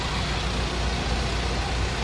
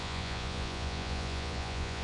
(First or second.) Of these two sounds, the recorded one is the first